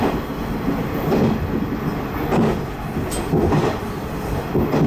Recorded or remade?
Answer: recorded